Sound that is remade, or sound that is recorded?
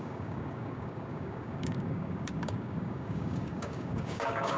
remade